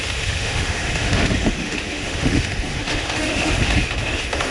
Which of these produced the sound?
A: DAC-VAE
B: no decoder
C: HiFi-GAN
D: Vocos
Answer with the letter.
A